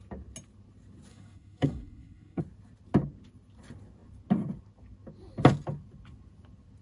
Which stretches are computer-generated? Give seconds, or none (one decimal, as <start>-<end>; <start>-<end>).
1.1-2.4